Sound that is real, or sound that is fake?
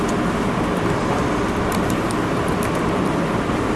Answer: real